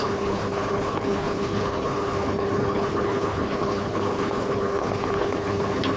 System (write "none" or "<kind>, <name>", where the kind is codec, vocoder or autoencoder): codec, HILCodec